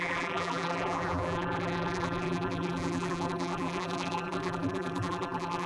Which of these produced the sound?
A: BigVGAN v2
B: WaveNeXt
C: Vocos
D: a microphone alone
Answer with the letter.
A